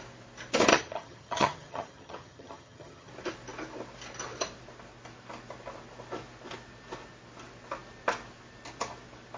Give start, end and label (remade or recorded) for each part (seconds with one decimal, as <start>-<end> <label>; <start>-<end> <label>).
0.0-0.7 recorded; 0.7-3.1 remade; 3.1-9.4 recorded